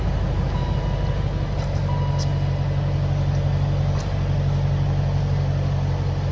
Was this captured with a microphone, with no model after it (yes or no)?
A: yes